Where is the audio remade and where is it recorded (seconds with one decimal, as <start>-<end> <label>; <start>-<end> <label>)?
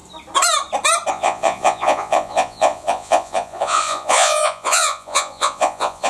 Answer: 0.0-1.1 recorded; 1.1-6.1 remade